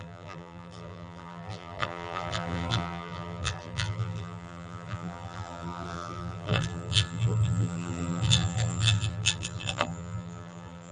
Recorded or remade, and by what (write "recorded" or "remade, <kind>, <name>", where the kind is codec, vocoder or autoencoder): remade, vocoder, BigVGAN v2